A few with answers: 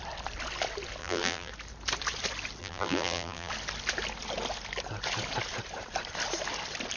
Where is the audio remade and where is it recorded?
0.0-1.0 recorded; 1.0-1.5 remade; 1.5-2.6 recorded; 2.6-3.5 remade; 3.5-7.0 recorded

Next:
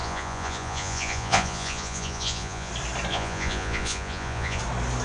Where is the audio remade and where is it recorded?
0.0-2.7 remade; 2.7-3.1 recorded; 3.1-4.6 remade; 4.6-5.0 recorded

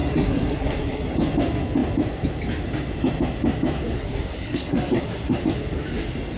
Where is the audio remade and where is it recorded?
0.0-1.1 remade; 1.1-4.0 recorded; 4.0-5.4 remade; 5.4-6.4 recorded

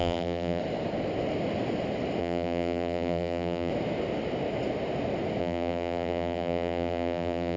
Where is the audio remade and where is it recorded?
0.0-0.6 remade; 0.6-2.2 recorded; 2.2-3.7 remade; 3.7-5.4 recorded; 5.4-7.6 remade

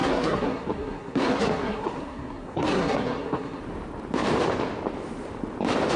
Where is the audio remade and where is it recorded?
0.0-3.6 remade; 3.6-6.0 recorded

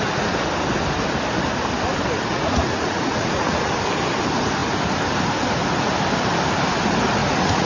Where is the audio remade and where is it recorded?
0.0-2.3 recorded; 2.3-3.7 remade; 3.7-7.2 recorded; 7.2-7.7 remade

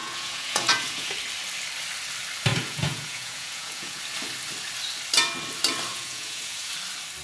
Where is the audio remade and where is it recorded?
0.0-1.1 remade; 1.1-2.5 recorded; 2.5-4.0 remade; 4.0-5.9 recorded; 5.9-6.7 remade; 6.7-7.2 recorded